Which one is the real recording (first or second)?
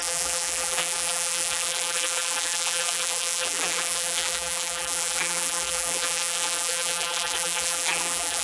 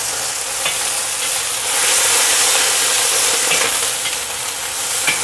second